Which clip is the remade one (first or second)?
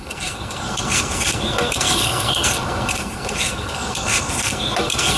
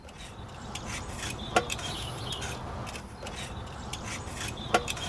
first